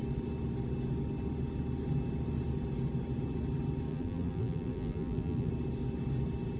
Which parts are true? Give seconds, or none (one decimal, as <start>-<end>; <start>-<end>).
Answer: 0.0-3.9; 5.5-6.6